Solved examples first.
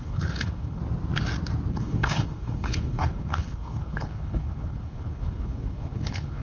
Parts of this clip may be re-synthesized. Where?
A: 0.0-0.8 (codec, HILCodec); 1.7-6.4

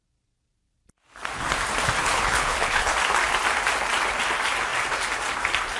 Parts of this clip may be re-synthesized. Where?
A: 2.0-2.9 (codec, HILCodec)

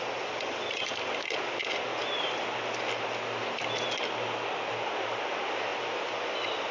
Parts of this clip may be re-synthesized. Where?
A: none

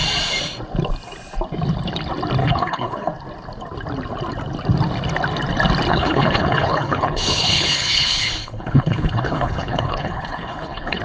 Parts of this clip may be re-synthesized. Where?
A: 2.4-3.1 (codec, HILCodec); 5.9-11.0

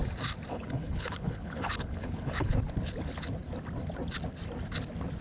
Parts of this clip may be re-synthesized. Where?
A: 0.5-2.5 (codec, HILCodec)

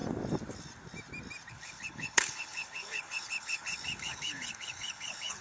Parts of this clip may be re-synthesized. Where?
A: 1.5-5.4 (codec, HILCodec)

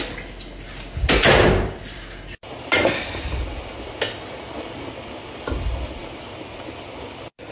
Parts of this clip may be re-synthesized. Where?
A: none

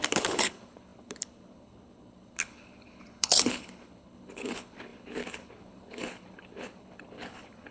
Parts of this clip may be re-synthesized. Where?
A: 0.0-7.7 (codec, HILCodec)